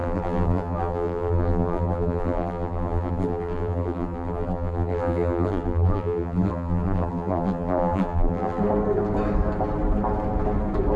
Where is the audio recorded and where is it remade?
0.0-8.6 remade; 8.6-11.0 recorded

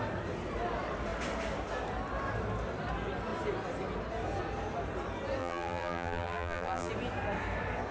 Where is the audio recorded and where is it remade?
0.0-5.4 recorded; 5.4-6.9 remade; 6.9-7.9 recorded

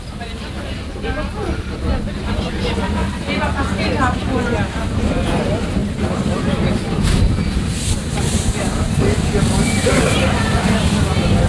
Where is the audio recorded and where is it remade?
0.0-3.0 remade; 3.0-4.8 recorded; 4.8-11.5 remade

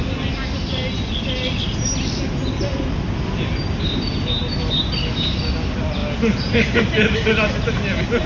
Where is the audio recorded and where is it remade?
0.0-8.3 recorded

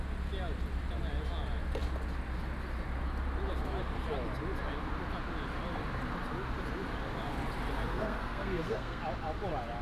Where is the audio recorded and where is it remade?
0.0-7.9 recorded; 7.9-9.0 remade; 9.0-9.8 recorded

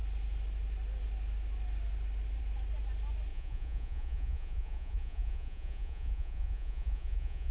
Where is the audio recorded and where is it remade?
0.0-3.3 recorded; 3.3-7.5 remade

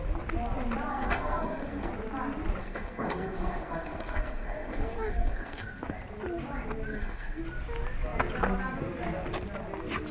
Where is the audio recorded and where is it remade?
0.0-0.9 recorded; 0.9-1.9 remade; 1.9-2.6 recorded; 2.6-5.8 remade; 5.8-6.9 recorded; 6.9-7.4 remade; 7.4-10.1 recorded